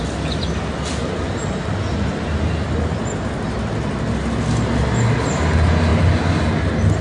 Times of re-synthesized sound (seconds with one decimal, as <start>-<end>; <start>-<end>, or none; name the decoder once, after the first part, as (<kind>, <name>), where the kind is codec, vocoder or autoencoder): none